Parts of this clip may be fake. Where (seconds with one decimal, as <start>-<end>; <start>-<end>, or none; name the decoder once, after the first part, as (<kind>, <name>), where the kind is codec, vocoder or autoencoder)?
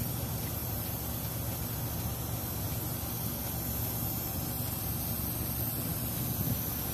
none